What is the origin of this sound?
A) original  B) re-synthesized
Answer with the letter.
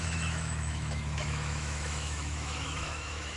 B